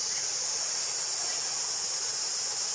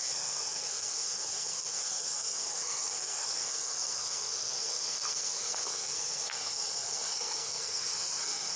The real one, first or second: first